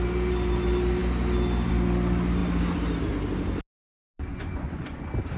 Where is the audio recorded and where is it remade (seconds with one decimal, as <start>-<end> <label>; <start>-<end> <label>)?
0.0-4.3 recorded; 4.3-5.0 remade; 5.0-5.4 recorded